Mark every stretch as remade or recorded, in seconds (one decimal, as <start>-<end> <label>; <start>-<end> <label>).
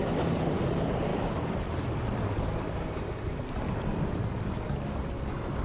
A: 0.0-1.1 recorded; 1.1-4.5 remade; 4.5-5.6 recorded